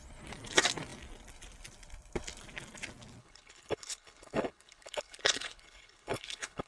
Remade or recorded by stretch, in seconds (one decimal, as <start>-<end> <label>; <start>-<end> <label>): 0.0-3.2 recorded; 3.2-6.7 remade